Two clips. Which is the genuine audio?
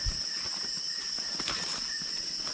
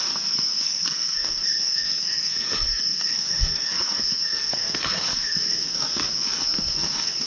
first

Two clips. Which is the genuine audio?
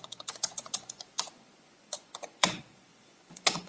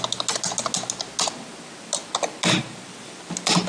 second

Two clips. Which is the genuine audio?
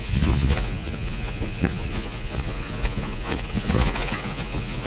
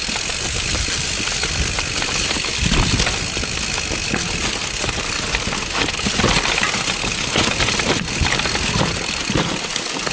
second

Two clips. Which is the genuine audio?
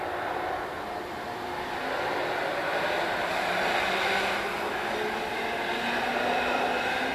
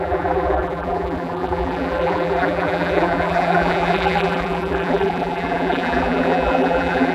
first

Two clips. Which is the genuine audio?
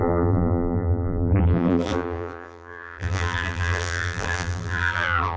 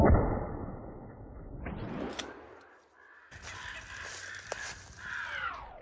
second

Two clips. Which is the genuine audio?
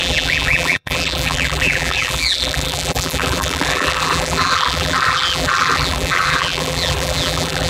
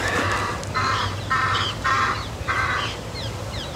second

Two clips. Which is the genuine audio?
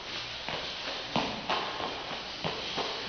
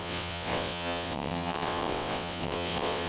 first